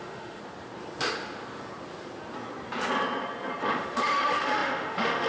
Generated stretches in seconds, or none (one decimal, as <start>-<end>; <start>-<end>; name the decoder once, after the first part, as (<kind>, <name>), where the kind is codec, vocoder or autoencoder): 0.0-0.4 (autoencoder, DAC-VAE); 3.6-5.3

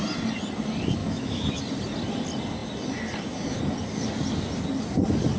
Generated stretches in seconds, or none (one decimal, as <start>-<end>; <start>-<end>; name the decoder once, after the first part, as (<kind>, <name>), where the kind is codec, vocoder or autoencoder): 1.0-1.6 (autoencoder, DAC-VAE)